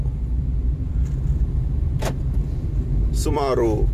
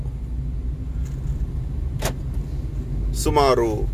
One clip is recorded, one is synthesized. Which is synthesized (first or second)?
first